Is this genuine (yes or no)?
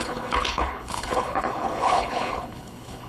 no